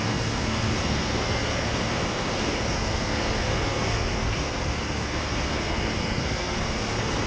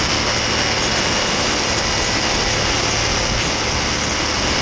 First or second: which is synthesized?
first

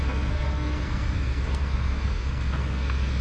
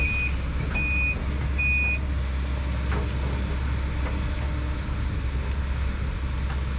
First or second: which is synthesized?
first